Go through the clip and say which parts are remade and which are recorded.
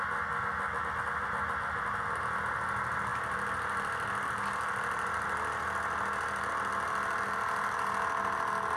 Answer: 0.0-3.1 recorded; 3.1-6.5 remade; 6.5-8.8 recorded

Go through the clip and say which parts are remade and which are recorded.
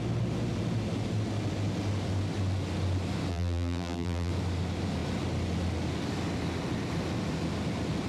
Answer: 0.0-3.3 recorded; 3.3-4.3 remade; 4.3-8.1 recorded